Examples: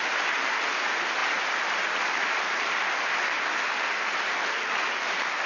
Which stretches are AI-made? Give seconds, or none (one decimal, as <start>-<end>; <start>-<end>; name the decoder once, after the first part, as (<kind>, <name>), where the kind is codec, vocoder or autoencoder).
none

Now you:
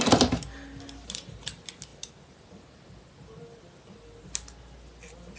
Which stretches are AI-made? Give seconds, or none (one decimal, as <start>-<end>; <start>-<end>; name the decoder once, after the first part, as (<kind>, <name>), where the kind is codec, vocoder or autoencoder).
none

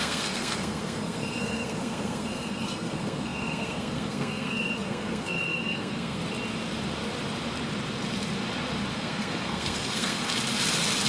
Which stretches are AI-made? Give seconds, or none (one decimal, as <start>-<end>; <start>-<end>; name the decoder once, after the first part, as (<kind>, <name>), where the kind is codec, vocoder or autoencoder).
0.0-6.2 (codec, SNAC); 8.9-10.2

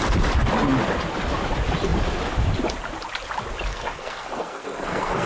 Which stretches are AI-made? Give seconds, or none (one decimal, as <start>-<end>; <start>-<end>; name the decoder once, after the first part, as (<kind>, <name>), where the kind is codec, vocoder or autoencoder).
3.7-5.3 (codec, SNAC)